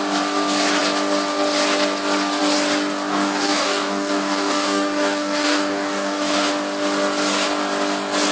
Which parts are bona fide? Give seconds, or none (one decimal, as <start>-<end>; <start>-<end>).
0.0-3.1; 6.5-8.3